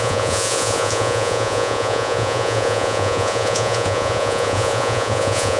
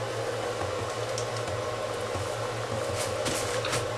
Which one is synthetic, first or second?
first